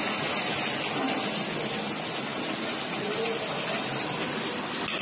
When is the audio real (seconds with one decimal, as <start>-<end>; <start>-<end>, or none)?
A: 0.0-2.3; 3.0-5.0